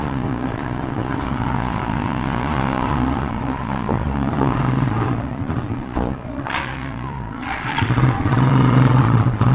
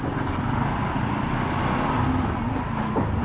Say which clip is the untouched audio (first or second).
second